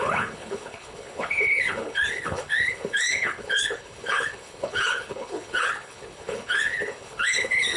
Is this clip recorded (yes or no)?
no